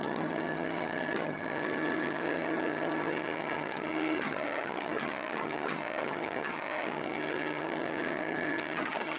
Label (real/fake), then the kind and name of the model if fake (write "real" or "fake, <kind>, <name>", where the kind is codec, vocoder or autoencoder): fake, vocoder, HiFi-GAN